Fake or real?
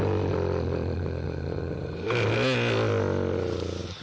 real